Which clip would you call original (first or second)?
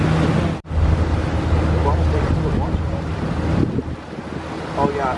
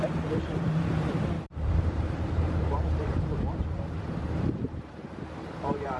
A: first